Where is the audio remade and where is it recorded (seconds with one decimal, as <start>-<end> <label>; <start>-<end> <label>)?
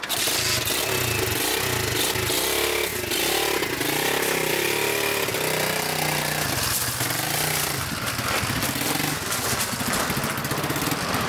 0.0-11.3 recorded